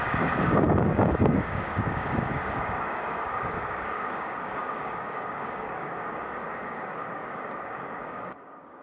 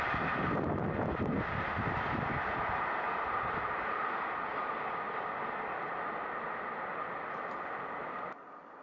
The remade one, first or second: first